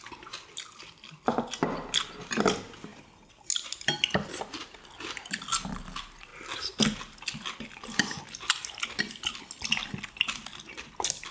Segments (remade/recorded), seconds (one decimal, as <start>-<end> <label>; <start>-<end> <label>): 0.0-11.3 recorded